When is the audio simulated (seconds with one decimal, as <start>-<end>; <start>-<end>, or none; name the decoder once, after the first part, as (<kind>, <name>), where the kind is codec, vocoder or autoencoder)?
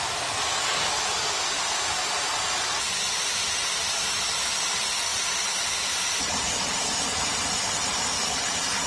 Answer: none